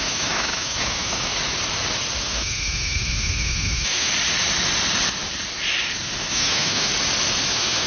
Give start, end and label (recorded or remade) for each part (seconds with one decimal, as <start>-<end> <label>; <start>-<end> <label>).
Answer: 0.0-1.3 remade; 1.3-2.2 recorded; 2.2-4.1 remade; 4.1-6.2 recorded; 6.2-6.9 remade; 6.9-7.5 recorded; 7.5-7.9 remade